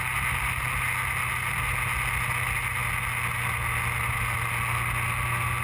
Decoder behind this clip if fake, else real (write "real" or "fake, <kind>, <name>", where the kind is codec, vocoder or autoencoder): real